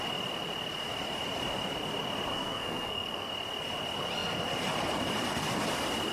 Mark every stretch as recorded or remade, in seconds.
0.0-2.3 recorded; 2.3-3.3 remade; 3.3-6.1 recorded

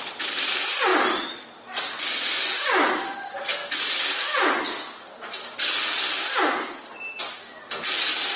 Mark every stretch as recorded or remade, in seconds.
0.0-3.6 remade; 3.6-7.2 recorded; 7.2-8.4 remade

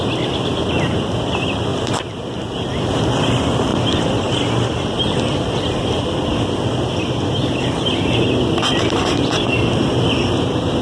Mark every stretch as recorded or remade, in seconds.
0.0-1.7 remade; 1.7-2.9 recorded; 2.9-10.8 remade

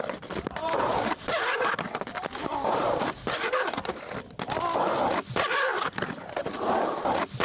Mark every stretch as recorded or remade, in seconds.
0.0-0.6 recorded; 0.6-1.8 remade; 1.8-2.5 recorded; 2.5-4.0 remade; 4.0-5.7 recorded; 5.7-6.2 remade; 6.2-7.4 recorded

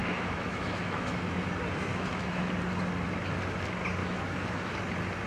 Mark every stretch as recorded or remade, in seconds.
0.0-1.5 remade; 1.5-1.9 recorded; 1.9-2.5 remade; 2.5-4.0 recorded; 4.0-4.8 remade; 4.8-5.3 recorded

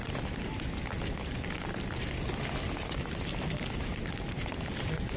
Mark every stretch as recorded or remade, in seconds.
0.0-5.2 recorded

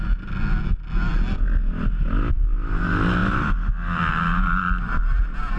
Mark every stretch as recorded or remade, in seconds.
0.0-5.6 recorded